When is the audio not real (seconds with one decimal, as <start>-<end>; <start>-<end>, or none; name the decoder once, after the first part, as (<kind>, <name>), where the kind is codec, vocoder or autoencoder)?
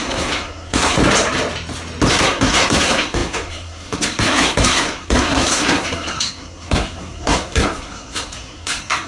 0.0-1.0 (codec, SNAC); 2.1-9.1